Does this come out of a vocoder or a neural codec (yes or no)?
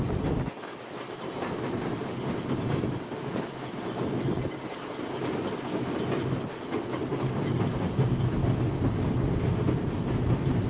no